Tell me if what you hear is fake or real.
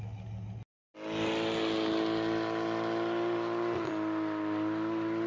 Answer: real